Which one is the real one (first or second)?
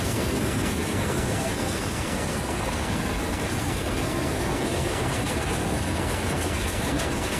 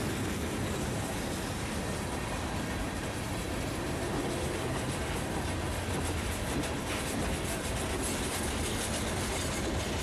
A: second